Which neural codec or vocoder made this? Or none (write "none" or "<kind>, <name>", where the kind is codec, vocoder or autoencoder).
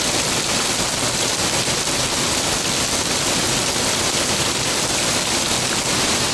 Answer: none